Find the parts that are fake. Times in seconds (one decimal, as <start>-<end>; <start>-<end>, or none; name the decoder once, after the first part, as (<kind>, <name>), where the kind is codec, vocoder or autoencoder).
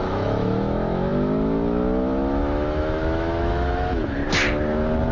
0.0-4.2 (autoencoder, DAC-VAE)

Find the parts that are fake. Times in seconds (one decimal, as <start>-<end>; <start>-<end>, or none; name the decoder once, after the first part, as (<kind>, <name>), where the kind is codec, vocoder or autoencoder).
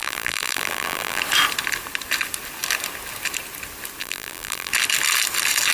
0.0-1.2 (vocoder, BigVGAN v2); 4.0-4.7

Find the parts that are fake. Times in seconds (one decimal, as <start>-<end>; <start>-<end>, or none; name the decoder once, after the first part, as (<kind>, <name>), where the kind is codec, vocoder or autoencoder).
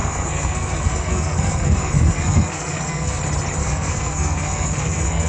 0.0-3.2 (codec, SNAC); 3.6-5.3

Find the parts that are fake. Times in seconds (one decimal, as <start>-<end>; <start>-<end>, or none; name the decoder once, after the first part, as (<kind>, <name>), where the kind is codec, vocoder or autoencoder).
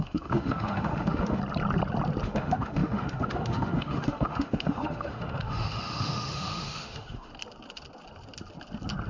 0.0-1.4 (autoencoder, DAC-VAE); 2.2-7.3